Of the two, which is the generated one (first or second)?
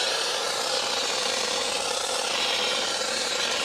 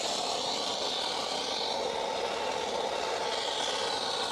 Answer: first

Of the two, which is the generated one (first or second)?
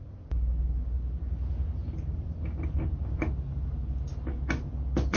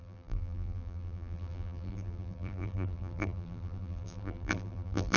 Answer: second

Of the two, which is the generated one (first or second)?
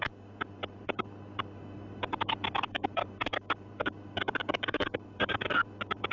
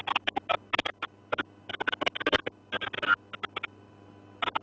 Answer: first